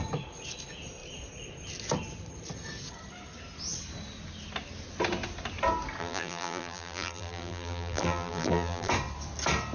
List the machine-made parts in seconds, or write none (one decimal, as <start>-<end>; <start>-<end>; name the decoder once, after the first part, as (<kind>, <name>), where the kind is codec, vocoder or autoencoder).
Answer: 6.0-8.9 (vocoder, BigVGAN v2)